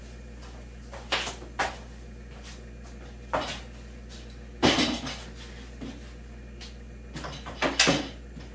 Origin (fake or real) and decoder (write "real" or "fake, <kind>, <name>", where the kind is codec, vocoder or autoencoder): real